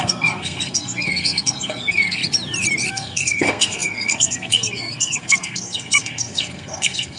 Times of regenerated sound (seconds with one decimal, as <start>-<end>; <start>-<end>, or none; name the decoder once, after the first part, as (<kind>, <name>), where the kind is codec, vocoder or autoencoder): 0.0-2.2 (codec, SNAC); 2.9-7.2

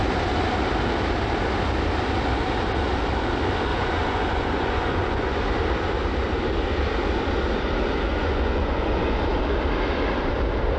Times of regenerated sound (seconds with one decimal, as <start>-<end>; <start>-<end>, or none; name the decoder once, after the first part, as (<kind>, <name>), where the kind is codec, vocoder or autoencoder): 3.7-5.4 (vocoder, Vocos); 8.1-9.2